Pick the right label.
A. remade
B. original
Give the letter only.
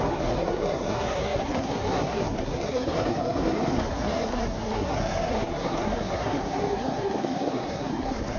A